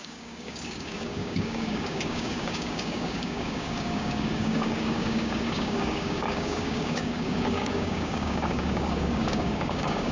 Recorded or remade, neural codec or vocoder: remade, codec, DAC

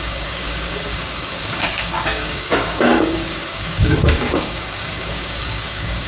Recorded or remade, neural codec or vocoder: remade, codec, DAC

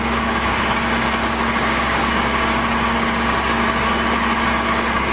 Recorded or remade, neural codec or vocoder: remade, codec, DAC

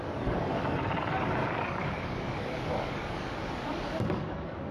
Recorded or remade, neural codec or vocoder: remade, codec, DAC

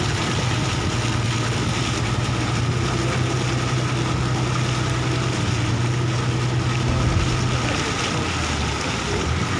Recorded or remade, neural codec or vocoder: recorded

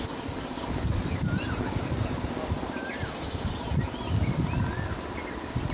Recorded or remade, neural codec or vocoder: recorded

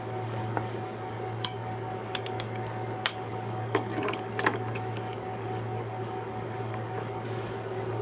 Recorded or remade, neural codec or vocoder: remade, codec, DAC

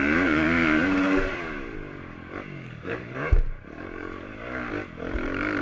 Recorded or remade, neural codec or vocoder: remade, codec, DAC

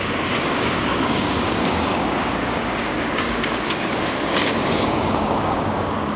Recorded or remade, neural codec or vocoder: remade, codec, DAC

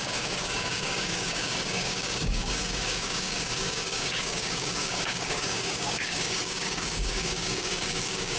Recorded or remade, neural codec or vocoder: remade, codec, DAC